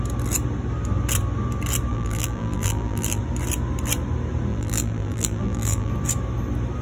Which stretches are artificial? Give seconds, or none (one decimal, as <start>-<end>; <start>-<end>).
1.9-3.2; 4.5-5.9